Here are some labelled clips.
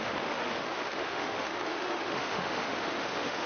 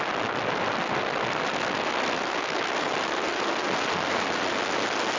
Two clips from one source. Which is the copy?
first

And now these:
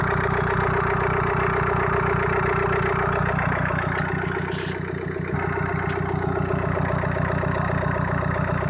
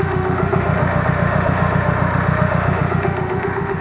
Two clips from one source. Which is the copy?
second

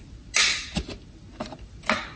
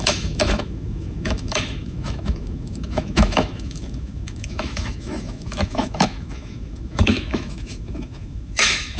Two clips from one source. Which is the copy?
second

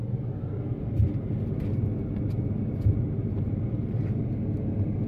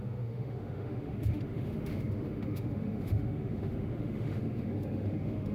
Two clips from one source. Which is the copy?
second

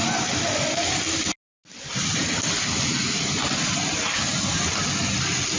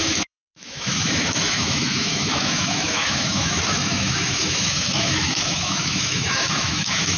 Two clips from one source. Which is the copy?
second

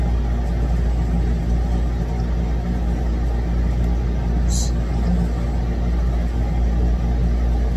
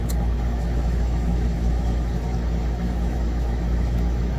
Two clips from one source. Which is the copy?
second